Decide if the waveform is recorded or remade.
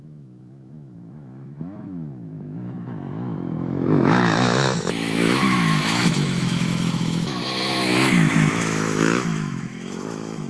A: remade